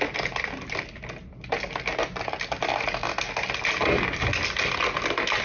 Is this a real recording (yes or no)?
yes